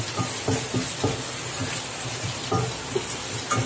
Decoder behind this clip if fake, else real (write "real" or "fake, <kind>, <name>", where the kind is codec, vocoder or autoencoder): real